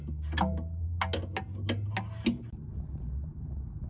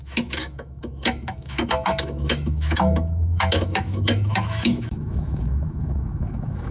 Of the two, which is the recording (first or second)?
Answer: first